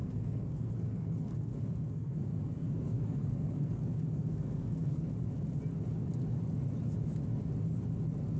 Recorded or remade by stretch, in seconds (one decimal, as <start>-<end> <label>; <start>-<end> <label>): 0.0-5.0 remade; 5.0-8.4 recorded